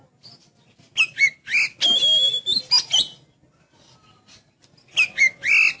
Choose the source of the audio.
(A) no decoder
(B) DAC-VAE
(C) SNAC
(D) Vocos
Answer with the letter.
A